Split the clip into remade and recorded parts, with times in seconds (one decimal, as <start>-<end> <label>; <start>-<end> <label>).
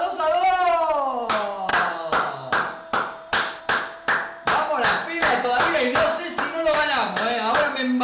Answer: 0.0-1.7 recorded; 1.7-3.6 remade; 3.6-5.2 recorded; 5.2-6.2 remade; 6.2-7.0 recorded; 7.0-7.6 remade; 7.6-8.0 recorded